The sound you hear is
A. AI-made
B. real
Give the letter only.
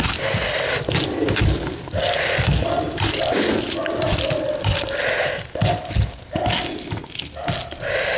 B